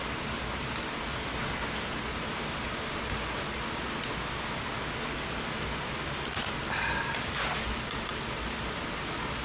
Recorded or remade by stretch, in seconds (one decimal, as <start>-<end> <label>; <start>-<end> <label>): 0.0-0.6 recorded; 0.6-1.4 remade; 1.4-9.4 recorded